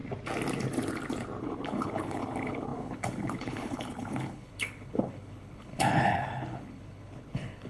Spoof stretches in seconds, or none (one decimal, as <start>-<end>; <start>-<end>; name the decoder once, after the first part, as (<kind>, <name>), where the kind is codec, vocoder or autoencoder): 1.4-7.7 (codec, HILCodec)